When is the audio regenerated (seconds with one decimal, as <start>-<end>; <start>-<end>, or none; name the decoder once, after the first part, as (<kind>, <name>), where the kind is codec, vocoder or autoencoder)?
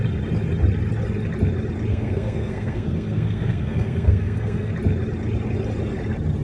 1.9-4.7 (codec, SNAC)